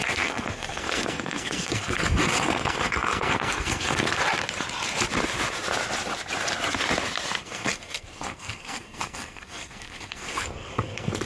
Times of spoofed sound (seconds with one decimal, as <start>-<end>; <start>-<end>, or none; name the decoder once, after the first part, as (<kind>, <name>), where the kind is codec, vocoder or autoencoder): 0.0-4.2 (codec, SNAC); 7.4-11.3

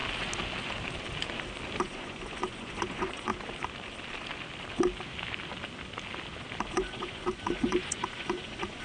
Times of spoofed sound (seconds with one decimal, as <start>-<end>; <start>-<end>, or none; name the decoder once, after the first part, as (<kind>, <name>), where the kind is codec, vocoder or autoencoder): 1.8-3.3 (vocoder, Vocos); 6.7-8.8

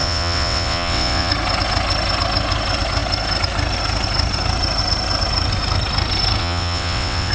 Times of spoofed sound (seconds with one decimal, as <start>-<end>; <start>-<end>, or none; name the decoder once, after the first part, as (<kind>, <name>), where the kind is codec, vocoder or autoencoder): 0.0-1.3 (vocoder, WaveNeXt); 6.4-7.3